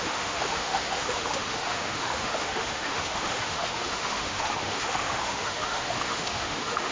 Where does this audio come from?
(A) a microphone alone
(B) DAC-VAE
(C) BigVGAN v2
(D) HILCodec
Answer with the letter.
B